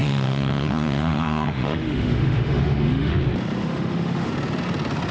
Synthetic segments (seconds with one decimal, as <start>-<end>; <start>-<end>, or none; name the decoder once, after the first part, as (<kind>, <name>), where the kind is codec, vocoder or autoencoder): 0.0-3.1 (autoencoder, DAC-VAE); 3.6-4.3